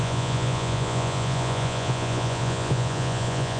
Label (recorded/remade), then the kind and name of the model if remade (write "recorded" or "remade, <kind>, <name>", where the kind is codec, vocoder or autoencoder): remade, vocoder, Vocos